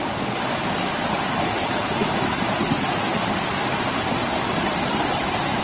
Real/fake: fake